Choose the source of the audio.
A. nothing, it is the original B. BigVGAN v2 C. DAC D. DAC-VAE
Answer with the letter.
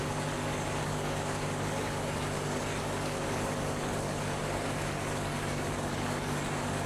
C